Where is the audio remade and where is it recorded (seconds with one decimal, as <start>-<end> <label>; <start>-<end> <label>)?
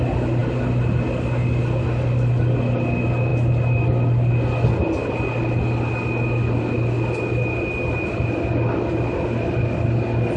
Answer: 0.0-10.4 recorded